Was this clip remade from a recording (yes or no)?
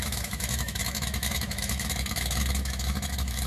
yes